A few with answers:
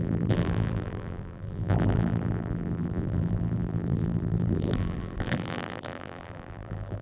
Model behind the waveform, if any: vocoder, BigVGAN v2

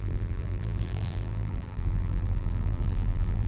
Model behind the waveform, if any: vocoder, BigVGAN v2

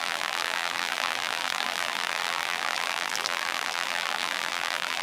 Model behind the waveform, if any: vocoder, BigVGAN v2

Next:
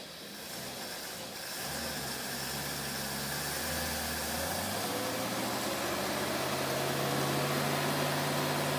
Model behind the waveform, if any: none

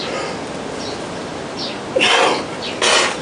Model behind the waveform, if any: none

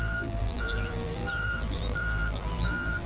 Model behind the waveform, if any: vocoder, BigVGAN v2